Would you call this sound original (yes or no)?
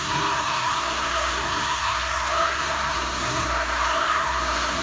no